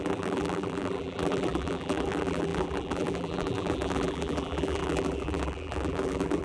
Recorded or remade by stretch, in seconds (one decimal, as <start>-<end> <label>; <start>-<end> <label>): 0.0-6.4 remade